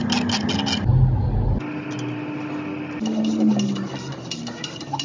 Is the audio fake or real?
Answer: real